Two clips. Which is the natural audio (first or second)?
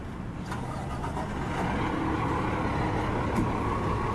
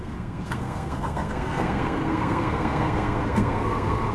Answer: first